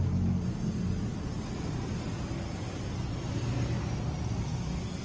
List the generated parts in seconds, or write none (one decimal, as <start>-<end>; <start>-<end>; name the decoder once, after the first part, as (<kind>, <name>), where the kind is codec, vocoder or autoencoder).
none